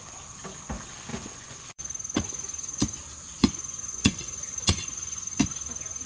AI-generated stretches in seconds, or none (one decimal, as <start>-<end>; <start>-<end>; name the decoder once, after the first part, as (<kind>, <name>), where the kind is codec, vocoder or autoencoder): 1.1-1.8 (vocoder, Vocos); 3.4-5.4